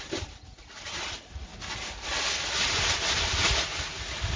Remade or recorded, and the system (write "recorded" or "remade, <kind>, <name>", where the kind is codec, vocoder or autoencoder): recorded